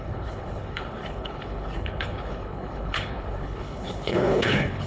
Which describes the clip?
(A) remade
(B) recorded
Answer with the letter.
A